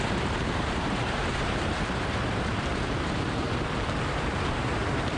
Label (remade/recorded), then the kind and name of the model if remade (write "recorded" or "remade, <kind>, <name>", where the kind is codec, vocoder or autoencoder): remade, vocoder, BigVGAN v2